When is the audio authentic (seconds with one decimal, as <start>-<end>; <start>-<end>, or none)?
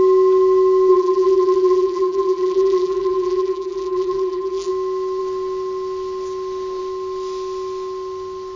0.0-0.9; 4.7-8.6